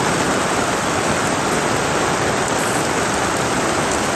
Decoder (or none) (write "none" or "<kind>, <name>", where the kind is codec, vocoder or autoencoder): vocoder, BigVGAN v2